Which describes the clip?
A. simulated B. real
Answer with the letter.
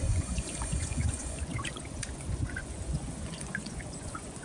A